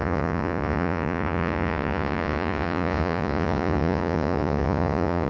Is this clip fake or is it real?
fake